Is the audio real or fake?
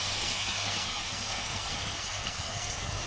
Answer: fake